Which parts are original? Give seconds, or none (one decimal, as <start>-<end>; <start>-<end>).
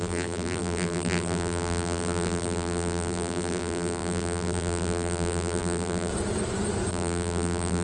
6.1-6.9